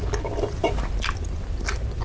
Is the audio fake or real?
real